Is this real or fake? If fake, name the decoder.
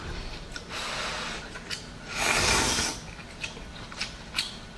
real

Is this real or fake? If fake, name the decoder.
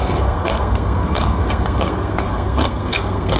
fake, codec, SNAC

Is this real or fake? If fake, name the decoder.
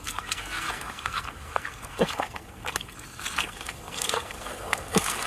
fake, codec, SNAC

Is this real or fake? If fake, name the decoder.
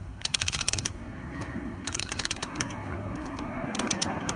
fake, codec, SNAC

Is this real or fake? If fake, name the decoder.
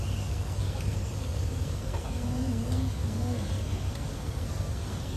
fake, codec, SNAC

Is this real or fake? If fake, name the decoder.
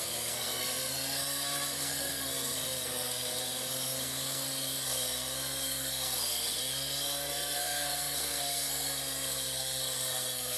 fake, codec, SNAC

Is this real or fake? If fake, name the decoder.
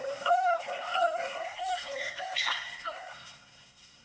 fake, codec, SNAC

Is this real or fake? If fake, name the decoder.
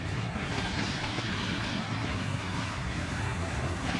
fake, codec, SNAC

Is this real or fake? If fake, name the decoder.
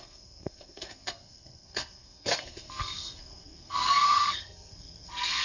fake, codec, SNAC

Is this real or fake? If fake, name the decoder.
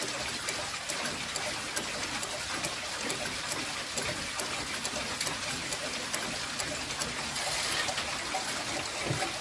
real